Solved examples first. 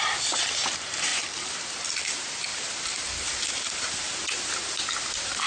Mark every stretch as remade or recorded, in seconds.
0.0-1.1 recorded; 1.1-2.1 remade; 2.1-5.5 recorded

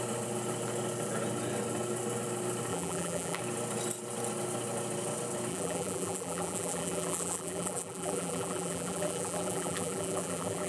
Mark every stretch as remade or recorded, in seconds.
0.0-2.7 recorded; 2.7-3.4 remade; 3.4-5.5 recorded; 5.5-10.7 remade